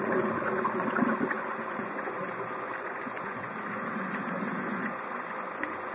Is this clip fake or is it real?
fake